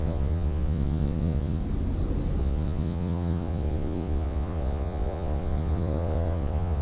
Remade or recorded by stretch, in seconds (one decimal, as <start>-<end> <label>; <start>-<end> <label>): 0.0-1.6 remade; 1.6-2.4 recorded; 2.4-6.8 remade